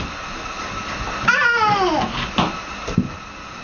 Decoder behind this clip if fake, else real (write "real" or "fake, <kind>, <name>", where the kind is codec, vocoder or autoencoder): real